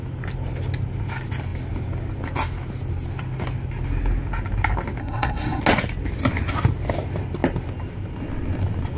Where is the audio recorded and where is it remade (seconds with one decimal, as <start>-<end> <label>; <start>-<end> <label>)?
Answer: 0.0-5.0 recorded; 5.0-5.6 remade; 5.6-9.0 recorded